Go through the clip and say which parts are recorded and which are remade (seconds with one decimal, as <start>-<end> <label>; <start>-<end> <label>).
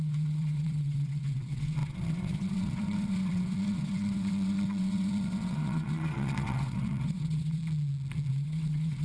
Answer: 0.0-7.6 remade; 7.6-8.3 recorded; 8.3-9.0 remade